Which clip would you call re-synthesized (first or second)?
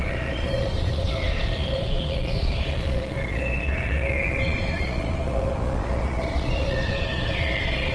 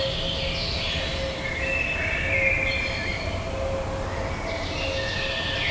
first